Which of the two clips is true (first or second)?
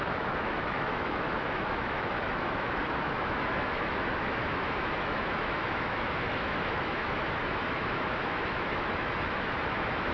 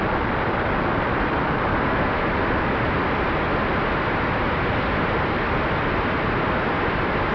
second